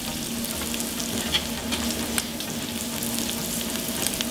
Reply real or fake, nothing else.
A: real